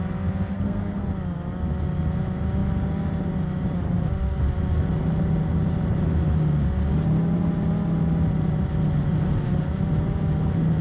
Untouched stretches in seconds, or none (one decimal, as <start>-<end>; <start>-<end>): 0.0-0.5; 1.0-10.8